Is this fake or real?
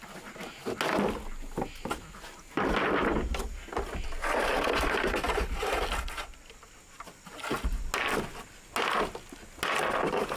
real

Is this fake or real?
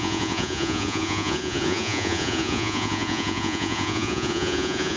fake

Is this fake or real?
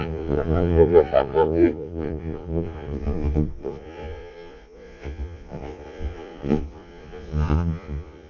fake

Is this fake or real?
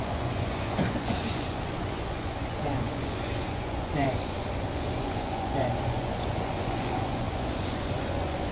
fake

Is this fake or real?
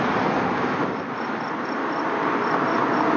real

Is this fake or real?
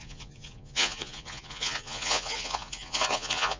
fake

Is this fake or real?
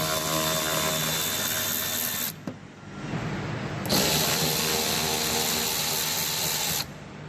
real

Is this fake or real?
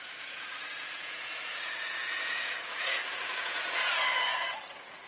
fake